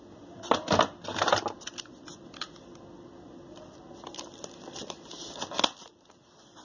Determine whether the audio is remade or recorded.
recorded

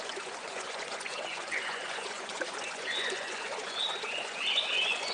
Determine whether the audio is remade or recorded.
remade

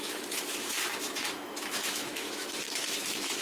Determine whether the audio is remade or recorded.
remade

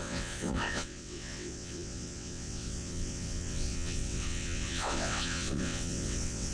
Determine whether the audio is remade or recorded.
remade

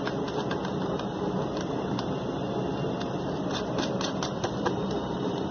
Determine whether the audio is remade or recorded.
recorded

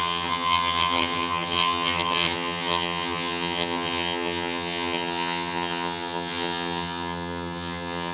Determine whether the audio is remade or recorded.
remade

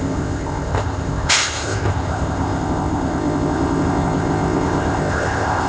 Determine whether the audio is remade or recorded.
remade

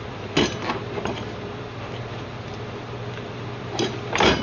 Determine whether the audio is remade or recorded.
recorded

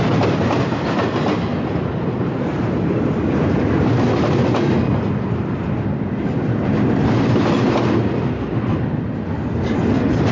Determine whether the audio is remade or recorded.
recorded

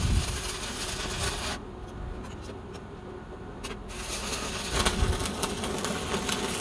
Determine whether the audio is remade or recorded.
recorded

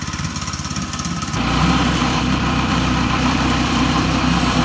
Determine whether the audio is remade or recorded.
remade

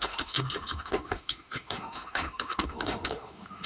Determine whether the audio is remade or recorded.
remade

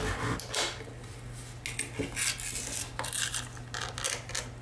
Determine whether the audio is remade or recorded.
recorded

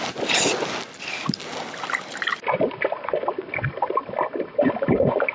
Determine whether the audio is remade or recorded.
recorded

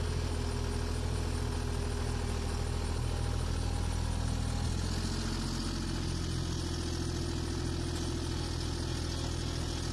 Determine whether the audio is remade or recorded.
recorded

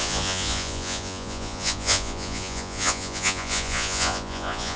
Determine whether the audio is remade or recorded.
remade